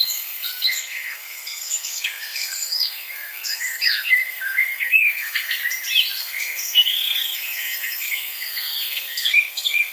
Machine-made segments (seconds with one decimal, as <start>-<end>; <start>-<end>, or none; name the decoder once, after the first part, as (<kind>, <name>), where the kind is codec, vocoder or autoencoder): 0.0-5.6 (codec, SNAC); 6.2-9.9